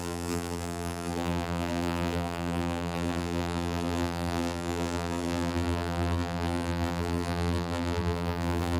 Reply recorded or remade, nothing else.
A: remade